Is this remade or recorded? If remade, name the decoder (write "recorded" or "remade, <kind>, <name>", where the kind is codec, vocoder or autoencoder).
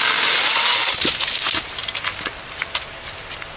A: recorded